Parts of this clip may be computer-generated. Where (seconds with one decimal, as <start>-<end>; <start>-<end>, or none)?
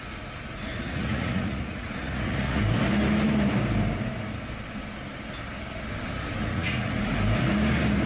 0.7-2.6; 6.4-6.9